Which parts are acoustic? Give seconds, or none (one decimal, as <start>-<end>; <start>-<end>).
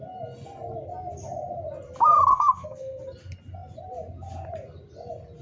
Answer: 0.0-2.3; 3.0-5.4